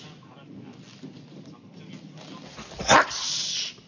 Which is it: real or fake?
real